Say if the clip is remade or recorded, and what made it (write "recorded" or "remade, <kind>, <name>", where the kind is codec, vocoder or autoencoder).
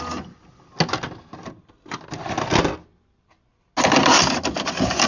recorded